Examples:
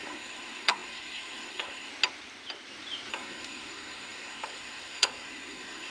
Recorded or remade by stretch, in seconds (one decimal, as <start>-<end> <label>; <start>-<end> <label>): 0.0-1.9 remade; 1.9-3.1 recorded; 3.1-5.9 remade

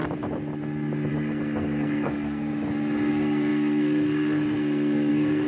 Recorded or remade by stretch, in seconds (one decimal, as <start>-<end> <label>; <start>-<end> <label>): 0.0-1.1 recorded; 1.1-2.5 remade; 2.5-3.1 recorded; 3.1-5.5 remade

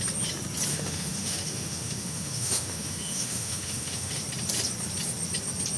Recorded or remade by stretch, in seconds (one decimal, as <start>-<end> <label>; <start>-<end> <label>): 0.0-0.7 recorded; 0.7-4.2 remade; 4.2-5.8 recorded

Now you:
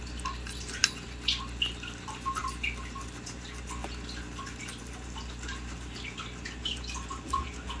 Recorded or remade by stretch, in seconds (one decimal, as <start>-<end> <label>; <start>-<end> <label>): 0.0-7.8 recorded

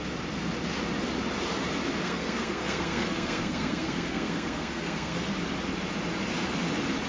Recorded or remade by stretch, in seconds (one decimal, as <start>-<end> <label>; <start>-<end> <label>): 0.0-2.0 recorded; 2.0-5.3 remade; 5.3-7.1 recorded

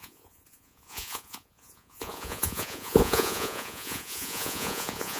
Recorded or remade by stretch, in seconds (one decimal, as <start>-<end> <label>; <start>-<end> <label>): 0.0-5.2 remade

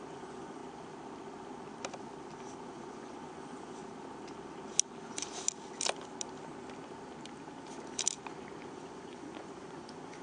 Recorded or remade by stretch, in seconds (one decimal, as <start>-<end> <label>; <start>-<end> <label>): 0.0-0.6 remade; 0.6-2.6 recorded; 2.6-3.8 remade; 3.8-8.7 recorded; 8.7-10.2 remade